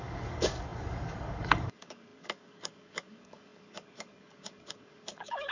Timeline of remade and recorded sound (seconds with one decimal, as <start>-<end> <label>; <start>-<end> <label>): 0.0-5.5 remade